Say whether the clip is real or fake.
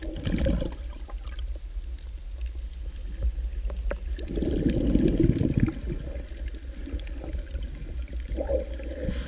real